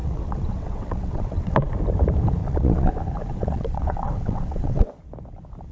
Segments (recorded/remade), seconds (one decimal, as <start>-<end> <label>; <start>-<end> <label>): 0.0-1.7 remade; 1.7-2.4 recorded; 2.4-2.9 remade; 2.9-3.3 recorded; 3.3-5.0 remade; 5.0-5.7 recorded